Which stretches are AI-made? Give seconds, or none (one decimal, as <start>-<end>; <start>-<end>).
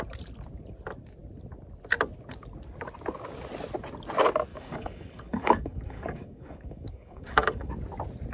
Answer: 4.5-7.7